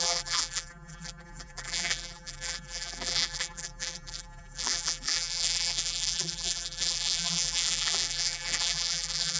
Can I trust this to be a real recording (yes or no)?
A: no